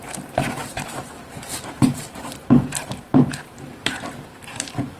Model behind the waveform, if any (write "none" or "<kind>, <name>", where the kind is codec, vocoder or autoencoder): vocoder, BigVGAN v2